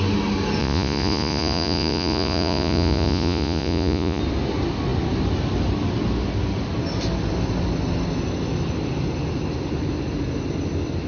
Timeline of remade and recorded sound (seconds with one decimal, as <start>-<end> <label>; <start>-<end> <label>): 0.0-0.6 recorded; 0.6-4.2 remade; 4.2-11.1 recorded